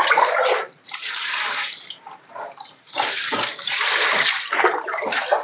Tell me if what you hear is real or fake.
fake